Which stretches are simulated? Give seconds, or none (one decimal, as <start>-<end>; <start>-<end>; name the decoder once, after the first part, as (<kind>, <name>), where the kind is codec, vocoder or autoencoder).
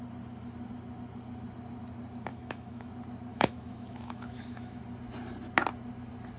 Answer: 2.3-2.9 (autoencoder, DAC-VAE); 3.3-4.8